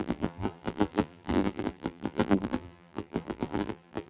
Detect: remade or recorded remade